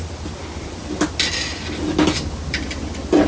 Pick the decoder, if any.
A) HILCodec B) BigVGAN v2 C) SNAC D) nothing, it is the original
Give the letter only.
D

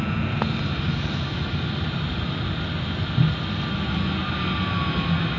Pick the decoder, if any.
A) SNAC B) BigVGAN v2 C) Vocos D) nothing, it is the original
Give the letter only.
D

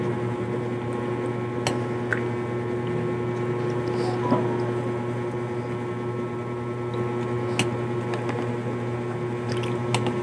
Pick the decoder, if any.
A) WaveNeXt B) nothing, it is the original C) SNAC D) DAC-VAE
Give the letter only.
B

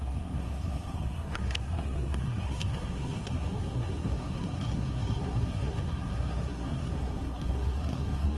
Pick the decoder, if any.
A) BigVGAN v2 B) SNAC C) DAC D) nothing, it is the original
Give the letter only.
B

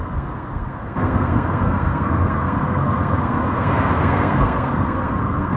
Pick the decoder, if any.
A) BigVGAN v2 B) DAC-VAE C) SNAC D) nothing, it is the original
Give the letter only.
C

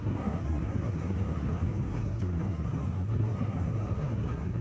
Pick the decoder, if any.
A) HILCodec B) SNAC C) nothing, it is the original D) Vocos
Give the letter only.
B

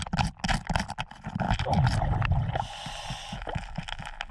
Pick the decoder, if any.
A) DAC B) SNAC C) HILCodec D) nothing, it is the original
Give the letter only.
D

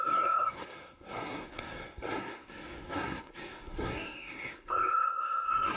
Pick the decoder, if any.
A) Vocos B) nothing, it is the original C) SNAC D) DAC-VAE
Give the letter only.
C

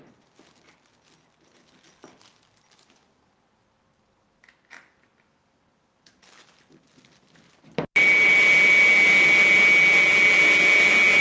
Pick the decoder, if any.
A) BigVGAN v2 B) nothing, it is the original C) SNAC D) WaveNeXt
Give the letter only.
B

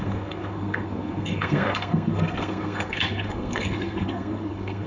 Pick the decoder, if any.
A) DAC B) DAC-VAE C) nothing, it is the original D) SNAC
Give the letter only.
D